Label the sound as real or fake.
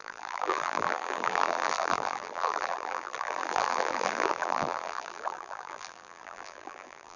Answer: fake